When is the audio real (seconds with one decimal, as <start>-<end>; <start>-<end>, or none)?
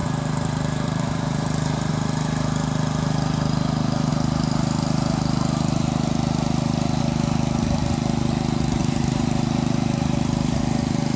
1.9-8.8; 10.6-11.2